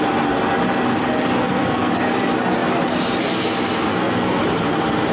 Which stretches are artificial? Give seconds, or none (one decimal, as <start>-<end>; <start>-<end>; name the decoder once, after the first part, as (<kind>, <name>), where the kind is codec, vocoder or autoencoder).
1.4-1.9 (codec, SNAC); 3.9-4.4